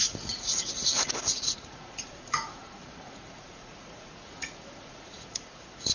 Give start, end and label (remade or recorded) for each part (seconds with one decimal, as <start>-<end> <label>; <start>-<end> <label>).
0.0-5.9 remade